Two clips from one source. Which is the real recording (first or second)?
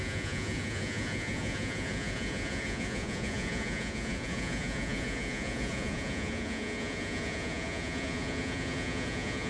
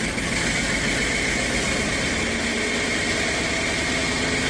second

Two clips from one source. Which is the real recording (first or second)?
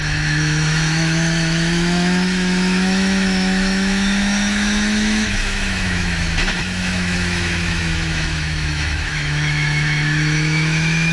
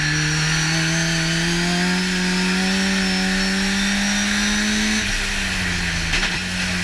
second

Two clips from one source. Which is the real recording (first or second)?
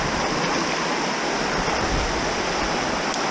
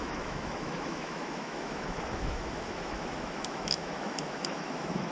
first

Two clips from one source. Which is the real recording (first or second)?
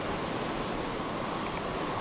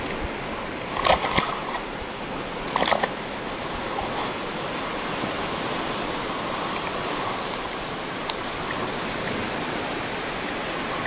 first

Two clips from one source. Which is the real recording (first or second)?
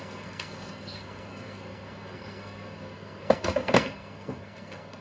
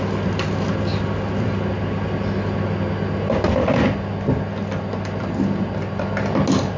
second